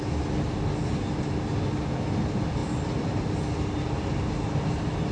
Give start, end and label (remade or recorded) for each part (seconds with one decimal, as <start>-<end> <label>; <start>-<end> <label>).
0.0-5.1 recorded